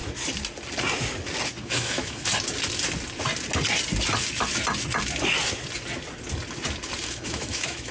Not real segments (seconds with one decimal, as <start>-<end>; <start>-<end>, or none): 1.6-2.3; 7.0-7.9